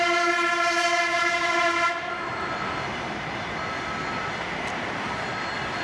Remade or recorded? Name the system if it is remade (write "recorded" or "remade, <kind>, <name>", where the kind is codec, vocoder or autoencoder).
recorded